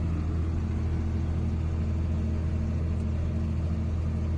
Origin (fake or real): real